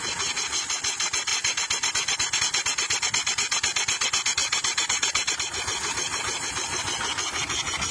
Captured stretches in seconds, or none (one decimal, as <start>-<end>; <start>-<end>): 0.0-4.4; 6.5-7.9

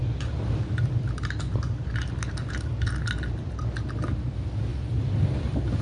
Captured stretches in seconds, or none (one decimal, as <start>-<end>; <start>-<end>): 0.0-4.7